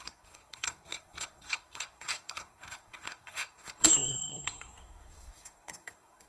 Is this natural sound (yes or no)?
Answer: no